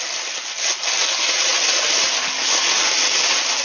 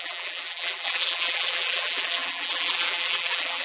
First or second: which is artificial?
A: second